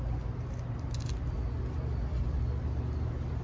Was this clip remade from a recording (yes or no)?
no